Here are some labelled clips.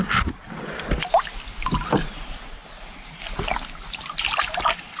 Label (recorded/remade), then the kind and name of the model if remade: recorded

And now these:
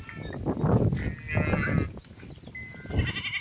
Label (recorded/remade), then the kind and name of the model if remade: recorded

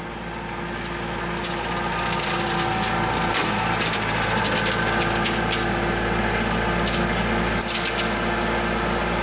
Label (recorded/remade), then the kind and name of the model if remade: recorded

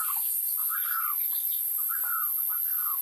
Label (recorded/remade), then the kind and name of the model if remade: recorded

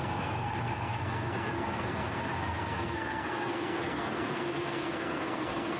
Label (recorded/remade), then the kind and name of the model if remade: remade, codec, SNAC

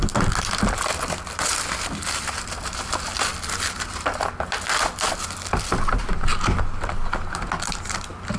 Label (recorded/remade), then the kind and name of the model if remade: recorded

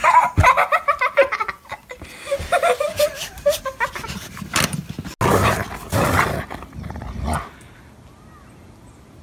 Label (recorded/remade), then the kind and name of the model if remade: recorded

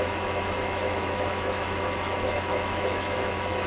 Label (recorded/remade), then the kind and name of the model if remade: remade, autoencoder, DAC-VAE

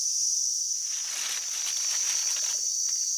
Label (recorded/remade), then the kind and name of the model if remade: recorded